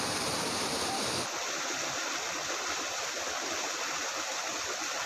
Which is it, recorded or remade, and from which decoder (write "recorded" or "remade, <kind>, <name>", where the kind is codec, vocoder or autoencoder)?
recorded